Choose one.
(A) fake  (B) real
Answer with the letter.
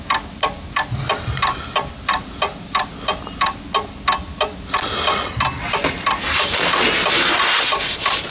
B